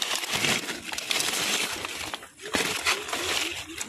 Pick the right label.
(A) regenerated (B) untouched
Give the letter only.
B